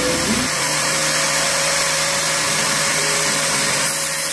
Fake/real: real